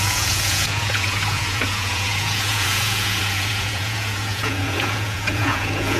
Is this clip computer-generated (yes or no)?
yes